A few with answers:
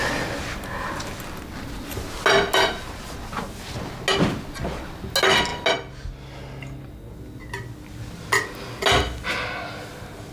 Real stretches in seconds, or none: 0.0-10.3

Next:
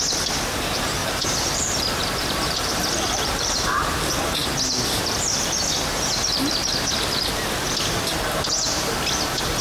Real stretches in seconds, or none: 0.0-1.0; 4.2-9.6